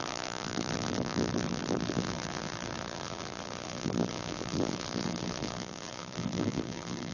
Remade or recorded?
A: remade